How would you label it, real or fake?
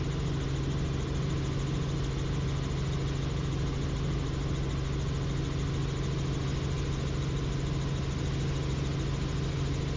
real